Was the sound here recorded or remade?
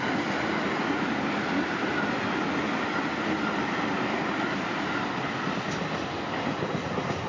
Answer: recorded